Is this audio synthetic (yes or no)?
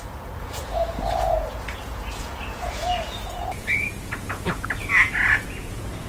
yes